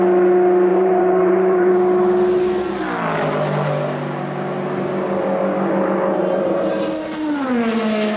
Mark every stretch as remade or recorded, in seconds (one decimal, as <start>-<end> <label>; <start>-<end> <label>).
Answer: 0.0-0.7 recorded; 0.7-1.7 remade; 1.7-6.2 recorded; 6.2-6.7 remade; 6.7-8.2 recorded